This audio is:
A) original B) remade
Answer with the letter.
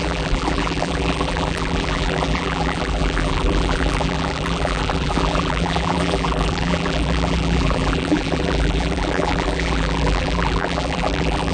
B